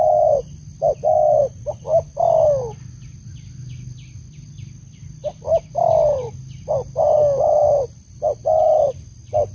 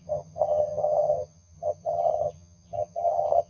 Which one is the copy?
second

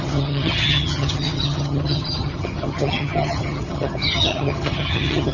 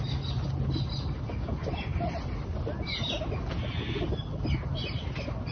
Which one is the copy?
first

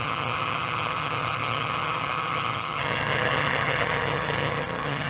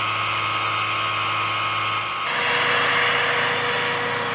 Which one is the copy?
first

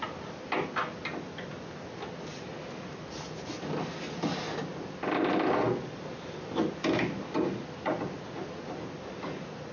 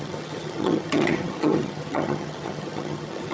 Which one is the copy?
second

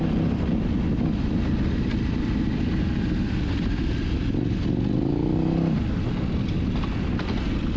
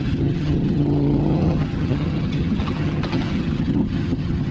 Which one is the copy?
second